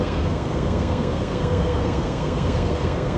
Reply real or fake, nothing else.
fake